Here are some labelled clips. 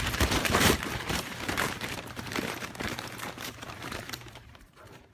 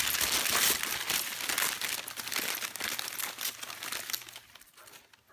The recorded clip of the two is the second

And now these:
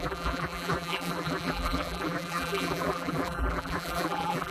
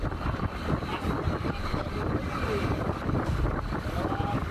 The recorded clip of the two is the second